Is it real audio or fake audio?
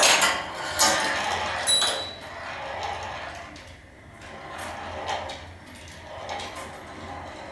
real